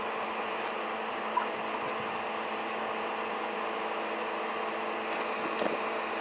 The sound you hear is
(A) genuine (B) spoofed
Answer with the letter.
A